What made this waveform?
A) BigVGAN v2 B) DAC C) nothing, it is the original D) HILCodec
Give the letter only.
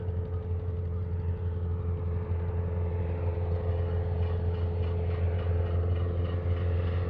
C